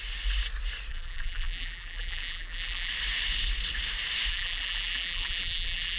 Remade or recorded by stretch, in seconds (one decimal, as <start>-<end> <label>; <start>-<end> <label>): 0.0-0.9 recorded; 0.9-2.9 remade; 2.9-4.3 recorded; 4.3-6.0 remade